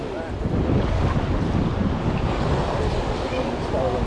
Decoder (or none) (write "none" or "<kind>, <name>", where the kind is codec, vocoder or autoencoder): none